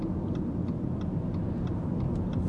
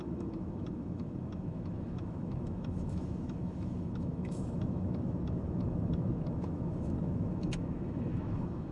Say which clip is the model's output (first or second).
second